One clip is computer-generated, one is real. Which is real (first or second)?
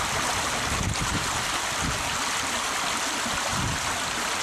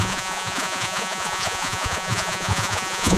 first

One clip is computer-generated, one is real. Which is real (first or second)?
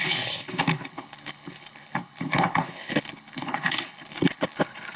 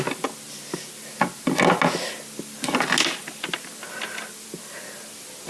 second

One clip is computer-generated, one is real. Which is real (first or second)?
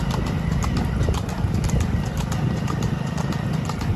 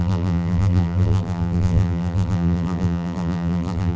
first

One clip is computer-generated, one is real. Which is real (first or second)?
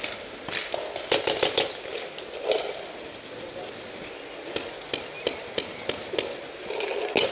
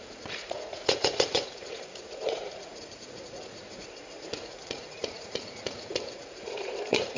first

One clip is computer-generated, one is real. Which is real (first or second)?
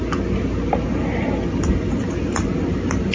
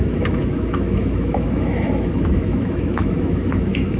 first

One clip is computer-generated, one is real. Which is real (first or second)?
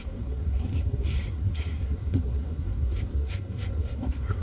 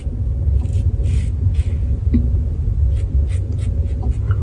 second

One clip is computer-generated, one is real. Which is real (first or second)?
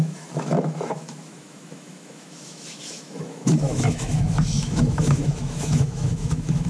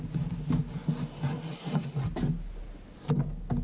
second